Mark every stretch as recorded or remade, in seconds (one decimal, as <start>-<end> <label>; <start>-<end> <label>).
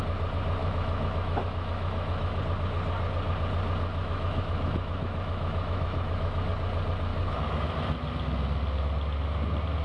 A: 0.0-0.6 recorded; 0.6-2.4 remade; 2.4-3.9 recorded; 3.9-6.5 remade; 6.5-7.1 recorded; 7.1-7.6 remade; 7.6-9.8 recorded